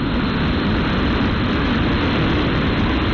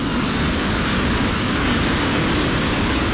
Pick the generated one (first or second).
second